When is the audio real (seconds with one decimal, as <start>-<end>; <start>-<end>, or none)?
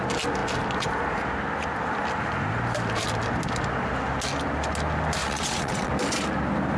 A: 0.0-5.2; 5.9-6.8